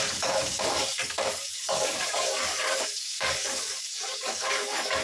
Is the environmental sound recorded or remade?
remade